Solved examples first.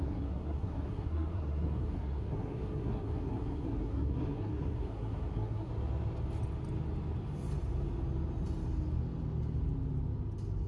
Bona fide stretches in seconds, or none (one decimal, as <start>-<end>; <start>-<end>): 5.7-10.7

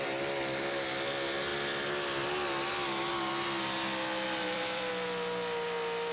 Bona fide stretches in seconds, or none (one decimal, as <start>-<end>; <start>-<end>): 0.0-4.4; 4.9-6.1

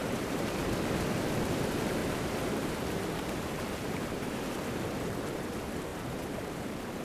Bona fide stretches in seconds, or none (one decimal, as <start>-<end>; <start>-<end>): 0.7-2.0; 4.9-5.9; 6.6-7.0

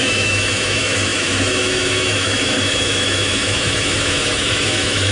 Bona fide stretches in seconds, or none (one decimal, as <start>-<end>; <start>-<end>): none